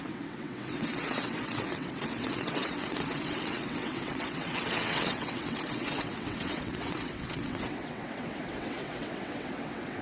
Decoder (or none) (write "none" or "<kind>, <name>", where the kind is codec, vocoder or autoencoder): vocoder, WaveNeXt